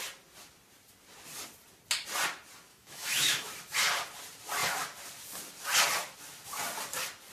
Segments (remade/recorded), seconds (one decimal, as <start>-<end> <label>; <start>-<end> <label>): 0.0-2.7 recorded; 2.7-3.5 remade; 3.5-7.3 recorded